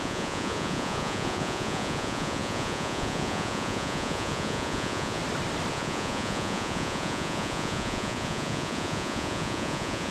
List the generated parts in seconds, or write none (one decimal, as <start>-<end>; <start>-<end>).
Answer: 0.0-5.2; 5.7-10.1